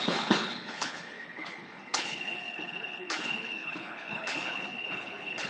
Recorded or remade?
remade